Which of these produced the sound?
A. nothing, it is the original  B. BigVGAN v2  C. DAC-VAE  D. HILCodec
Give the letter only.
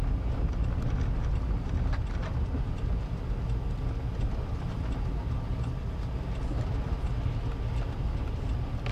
A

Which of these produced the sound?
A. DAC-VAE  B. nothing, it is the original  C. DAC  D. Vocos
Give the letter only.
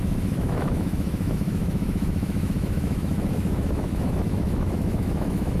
A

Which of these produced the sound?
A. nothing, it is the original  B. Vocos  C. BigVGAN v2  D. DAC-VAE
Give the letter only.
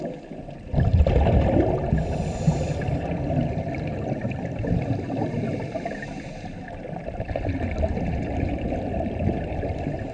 A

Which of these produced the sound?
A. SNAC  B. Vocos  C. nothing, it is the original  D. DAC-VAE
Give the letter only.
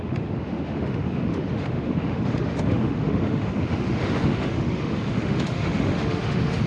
D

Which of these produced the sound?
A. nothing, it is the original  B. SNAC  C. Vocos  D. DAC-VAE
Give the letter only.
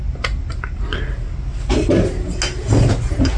A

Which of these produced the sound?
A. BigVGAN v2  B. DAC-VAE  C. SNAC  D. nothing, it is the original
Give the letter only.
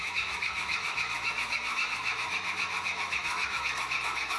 B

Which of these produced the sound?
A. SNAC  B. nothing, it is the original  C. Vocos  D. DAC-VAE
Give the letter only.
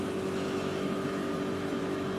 D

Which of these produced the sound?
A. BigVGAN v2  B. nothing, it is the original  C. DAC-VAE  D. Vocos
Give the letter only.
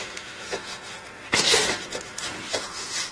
C